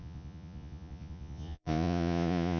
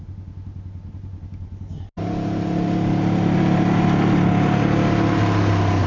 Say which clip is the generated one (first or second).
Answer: first